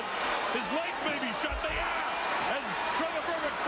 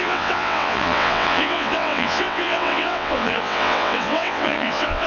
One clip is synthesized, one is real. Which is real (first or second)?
first